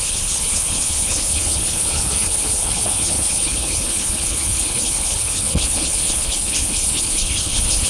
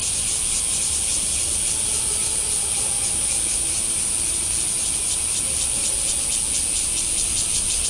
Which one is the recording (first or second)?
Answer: second